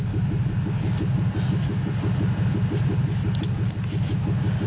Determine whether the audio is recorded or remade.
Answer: recorded